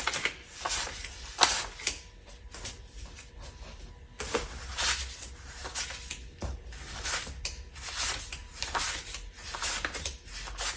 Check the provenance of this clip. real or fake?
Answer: real